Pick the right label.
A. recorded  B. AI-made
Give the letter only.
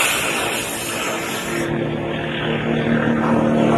A